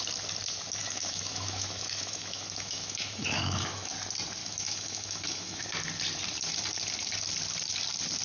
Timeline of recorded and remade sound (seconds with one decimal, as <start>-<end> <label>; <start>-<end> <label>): 0.0-0.8 recorded; 0.8-3.9 remade; 3.9-4.4 recorded; 4.4-5.6 remade; 5.6-8.2 recorded